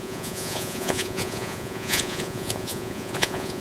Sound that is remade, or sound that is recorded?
remade